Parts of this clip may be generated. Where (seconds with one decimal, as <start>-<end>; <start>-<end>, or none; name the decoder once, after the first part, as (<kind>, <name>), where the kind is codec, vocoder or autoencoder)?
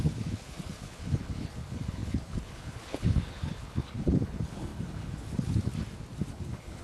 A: 0.0-5.7 (codec, HILCodec); 6.3-6.8